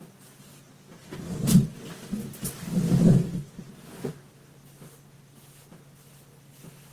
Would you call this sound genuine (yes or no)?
yes